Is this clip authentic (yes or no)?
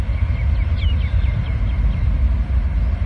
yes